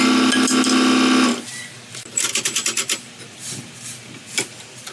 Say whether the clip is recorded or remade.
recorded